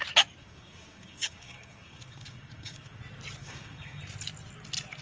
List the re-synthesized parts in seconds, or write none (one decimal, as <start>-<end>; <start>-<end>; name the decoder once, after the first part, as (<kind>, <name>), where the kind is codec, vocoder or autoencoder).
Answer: 0.4-3.0 (codec, DAC); 3.4-4.0